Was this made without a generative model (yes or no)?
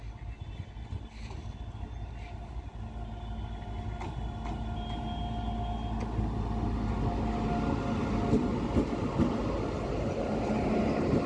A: yes